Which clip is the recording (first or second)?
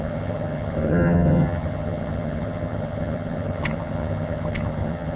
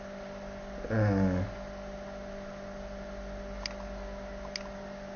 second